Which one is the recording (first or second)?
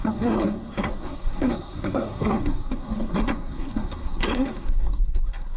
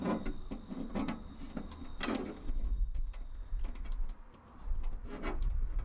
second